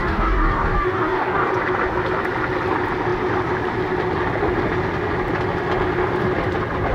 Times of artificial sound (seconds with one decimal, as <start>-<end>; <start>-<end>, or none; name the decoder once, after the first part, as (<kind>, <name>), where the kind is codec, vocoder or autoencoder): 0.0-1.5 (codec, DAC)